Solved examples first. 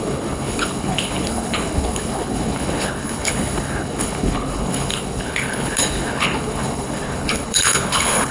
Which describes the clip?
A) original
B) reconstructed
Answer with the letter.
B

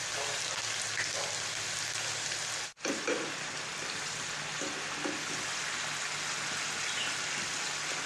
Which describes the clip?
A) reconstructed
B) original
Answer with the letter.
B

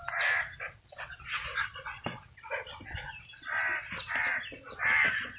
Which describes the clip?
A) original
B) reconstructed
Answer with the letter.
A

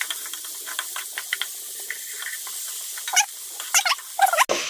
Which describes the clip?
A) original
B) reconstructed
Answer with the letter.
A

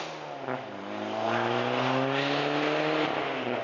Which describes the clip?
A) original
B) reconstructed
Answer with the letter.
A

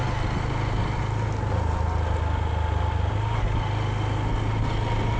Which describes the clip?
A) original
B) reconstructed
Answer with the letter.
A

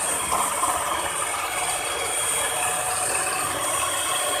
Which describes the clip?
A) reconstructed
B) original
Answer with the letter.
B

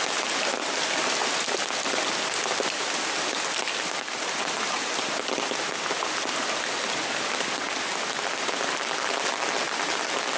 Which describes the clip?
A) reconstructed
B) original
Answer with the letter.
B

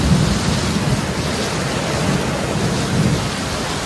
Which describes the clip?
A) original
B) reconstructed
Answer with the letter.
A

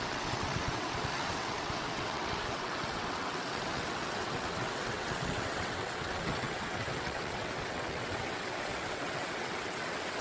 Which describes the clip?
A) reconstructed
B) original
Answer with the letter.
A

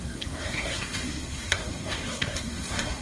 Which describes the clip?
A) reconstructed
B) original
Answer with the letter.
A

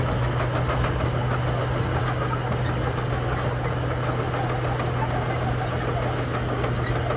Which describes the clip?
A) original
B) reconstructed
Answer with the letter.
A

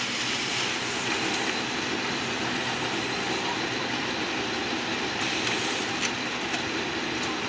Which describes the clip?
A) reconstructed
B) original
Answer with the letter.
B